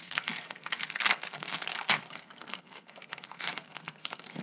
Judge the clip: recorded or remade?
remade